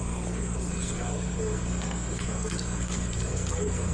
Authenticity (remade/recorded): remade